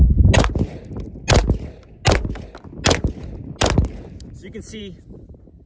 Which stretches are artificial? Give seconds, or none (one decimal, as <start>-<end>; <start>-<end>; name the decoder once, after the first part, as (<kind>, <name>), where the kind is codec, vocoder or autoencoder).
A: none